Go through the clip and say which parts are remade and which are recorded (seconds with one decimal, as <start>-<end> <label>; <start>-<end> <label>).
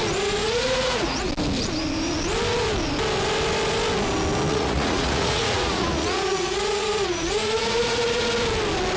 0.0-0.4 recorded; 0.4-1.3 remade; 1.3-4.5 recorded; 4.5-8.2 remade; 8.2-9.0 recorded